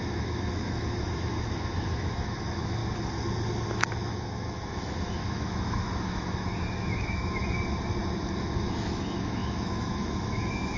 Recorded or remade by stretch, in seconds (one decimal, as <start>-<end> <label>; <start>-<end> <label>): 0.0-2.8 remade; 2.8-3.7 recorded; 3.7-7.4 remade; 7.4-8.0 recorded; 8.0-10.8 remade